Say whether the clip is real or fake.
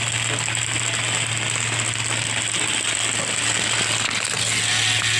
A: real